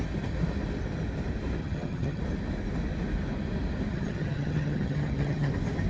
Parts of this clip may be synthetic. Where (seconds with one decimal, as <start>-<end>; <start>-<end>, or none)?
1.6-2.2; 3.9-5.5